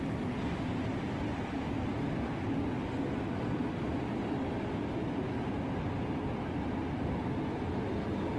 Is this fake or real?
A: real